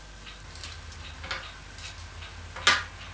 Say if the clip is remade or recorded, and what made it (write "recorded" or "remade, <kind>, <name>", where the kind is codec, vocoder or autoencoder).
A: recorded